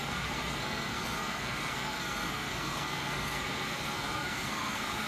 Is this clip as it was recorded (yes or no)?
no